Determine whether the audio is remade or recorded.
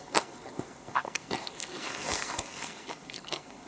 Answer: remade